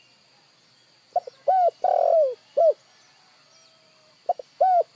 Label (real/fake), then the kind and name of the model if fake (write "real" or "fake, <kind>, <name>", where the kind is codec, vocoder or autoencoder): real